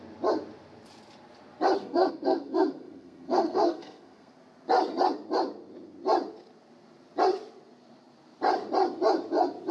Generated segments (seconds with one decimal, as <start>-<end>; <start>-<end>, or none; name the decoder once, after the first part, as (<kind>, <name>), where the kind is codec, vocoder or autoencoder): 1.8-4.3 (codec, SNAC)